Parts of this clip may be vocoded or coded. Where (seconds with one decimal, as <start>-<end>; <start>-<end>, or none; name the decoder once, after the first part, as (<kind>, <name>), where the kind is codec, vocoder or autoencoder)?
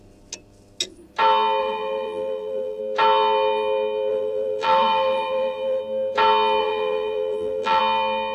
1.6-2.8 (vocoder, BigVGAN v2); 4.1-5.8; 6.6-7.8